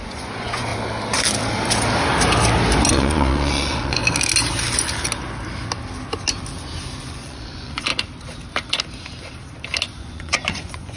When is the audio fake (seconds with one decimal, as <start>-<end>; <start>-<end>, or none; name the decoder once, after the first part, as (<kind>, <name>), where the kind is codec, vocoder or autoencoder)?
0.0-0.7 (vocoder, Vocos); 2.9-4.0; 7.0-7.9; 10.0-11.0